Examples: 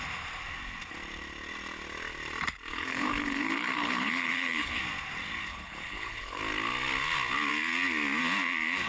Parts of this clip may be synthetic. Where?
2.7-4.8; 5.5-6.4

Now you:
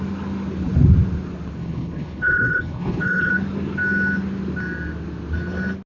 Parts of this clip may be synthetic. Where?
1.6-3.3

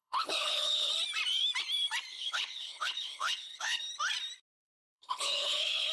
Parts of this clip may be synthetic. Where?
0.0-0.9; 2.1-3.8; 4.6-5.9

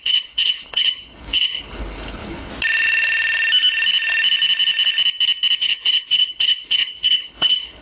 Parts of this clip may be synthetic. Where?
0.0-2.5; 5.6-7.8

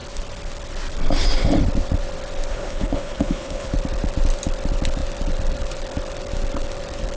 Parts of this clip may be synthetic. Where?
2.5-3.7

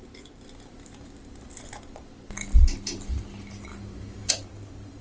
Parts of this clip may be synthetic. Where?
none

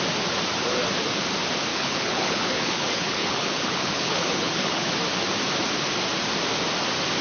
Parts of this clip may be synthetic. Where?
1.7-4.9

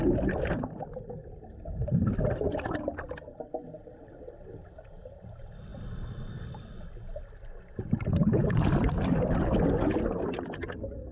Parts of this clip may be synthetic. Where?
8.2-8.7